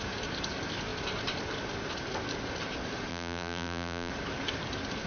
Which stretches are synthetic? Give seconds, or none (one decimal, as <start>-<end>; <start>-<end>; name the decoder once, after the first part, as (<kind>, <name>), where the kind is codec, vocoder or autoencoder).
3.1-4.1 (vocoder, BigVGAN v2)